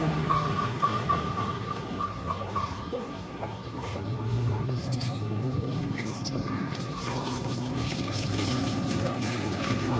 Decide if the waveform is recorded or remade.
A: remade